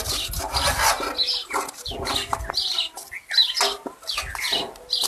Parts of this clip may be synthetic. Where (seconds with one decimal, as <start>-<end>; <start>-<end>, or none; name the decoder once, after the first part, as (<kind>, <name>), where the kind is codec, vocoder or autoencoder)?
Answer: none